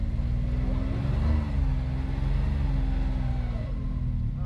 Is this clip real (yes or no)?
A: yes